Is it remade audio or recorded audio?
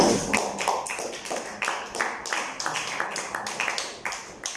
recorded